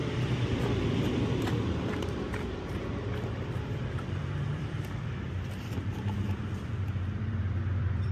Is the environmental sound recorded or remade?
remade